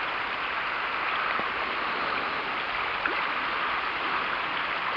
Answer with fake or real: real